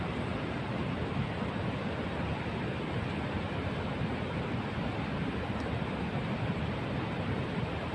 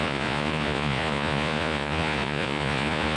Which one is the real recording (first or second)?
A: first